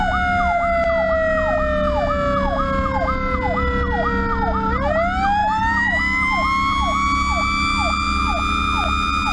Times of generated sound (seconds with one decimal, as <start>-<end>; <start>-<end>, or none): 5.4-6.0